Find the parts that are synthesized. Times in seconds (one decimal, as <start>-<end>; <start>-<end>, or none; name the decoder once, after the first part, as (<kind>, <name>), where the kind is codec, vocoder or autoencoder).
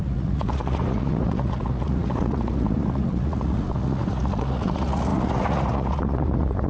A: 0.0-6.7 (vocoder, Vocos)